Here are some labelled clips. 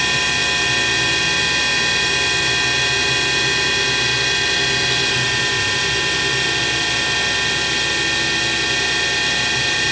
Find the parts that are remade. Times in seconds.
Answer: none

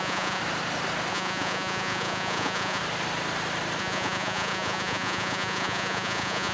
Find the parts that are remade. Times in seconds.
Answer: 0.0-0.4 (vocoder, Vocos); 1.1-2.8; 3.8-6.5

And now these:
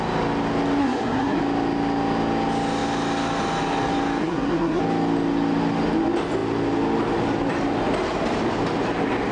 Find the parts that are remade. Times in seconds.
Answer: 0.8-1.4 (codec, SNAC); 4.2-4.8

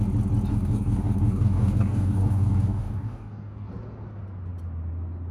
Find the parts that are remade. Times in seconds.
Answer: 0.5-3.7 (codec, DAC)

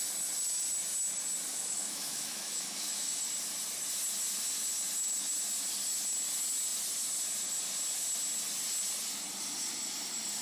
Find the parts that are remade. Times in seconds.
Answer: 1.5-3.2 (autoencoder, DAC-VAE)